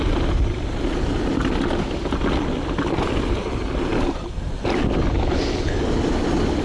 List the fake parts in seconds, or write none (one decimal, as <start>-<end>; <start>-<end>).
none